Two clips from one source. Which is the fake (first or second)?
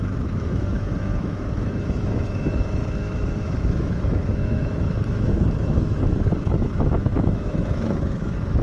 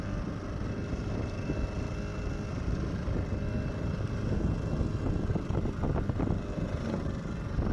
first